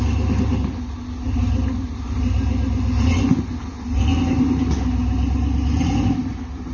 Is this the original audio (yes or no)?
yes